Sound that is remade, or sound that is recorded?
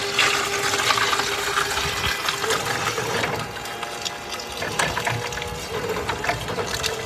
recorded